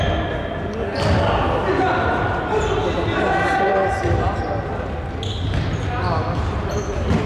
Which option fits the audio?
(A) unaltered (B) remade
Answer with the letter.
A